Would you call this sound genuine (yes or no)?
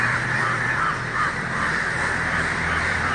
no